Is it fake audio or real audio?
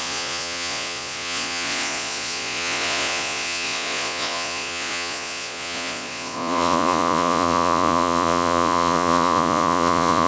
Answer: fake